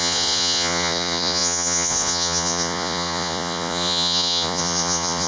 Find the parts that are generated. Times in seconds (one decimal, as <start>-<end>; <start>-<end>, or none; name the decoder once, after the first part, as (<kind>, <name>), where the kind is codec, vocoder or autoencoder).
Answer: 0.0-5.3 (vocoder, Vocos)